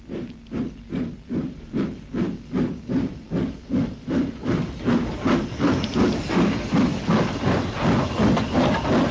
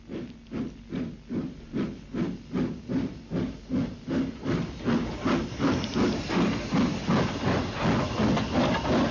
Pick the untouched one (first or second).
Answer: second